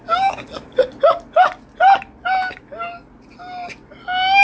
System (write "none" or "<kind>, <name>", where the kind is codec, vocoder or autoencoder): none